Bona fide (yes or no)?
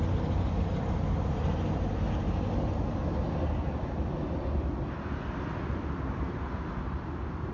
yes